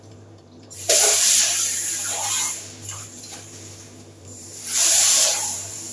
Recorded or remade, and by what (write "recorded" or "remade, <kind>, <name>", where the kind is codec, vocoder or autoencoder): remade, vocoder, BigVGAN v2